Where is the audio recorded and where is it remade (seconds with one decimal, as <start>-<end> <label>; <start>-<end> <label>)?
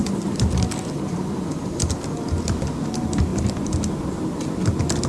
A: 0.0-1.8 remade; 1.8-5.1 recorded